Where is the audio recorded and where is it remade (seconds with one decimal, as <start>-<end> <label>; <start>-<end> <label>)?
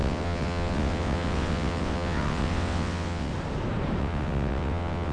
0.0-3.3 remade; 3.3-4.0 recorded; 4.0-5.1 remade